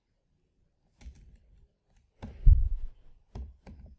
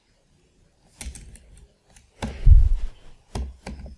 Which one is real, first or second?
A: second